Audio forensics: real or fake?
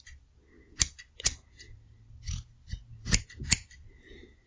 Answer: real